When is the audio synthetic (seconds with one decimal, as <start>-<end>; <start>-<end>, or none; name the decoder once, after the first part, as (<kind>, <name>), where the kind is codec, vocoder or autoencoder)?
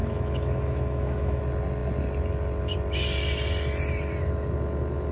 0.0-1.4 (autoencoder, DAC-VAE)